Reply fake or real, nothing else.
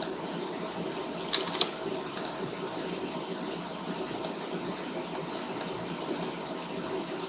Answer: real